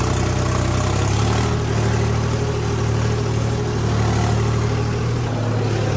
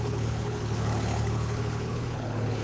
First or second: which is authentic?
first